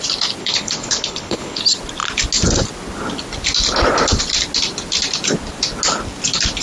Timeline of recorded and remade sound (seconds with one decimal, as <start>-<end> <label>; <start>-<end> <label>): 0.0-0.4 recorded; 0.4-1.6 remade; 1.6-6.6 recorded